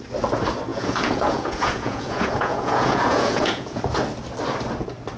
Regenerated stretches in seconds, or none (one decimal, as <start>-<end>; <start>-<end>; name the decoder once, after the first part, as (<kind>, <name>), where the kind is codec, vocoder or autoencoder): 0.7-3.8 (vocoder, Vocos)